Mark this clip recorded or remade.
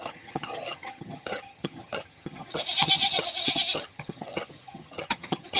remade